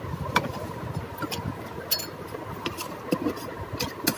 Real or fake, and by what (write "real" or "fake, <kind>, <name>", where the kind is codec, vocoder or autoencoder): real